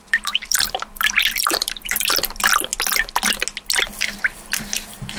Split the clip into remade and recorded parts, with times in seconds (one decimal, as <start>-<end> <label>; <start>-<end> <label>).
0.0-2.7 remade; 2.7-3.8 recorded; 3.8-5.2 remade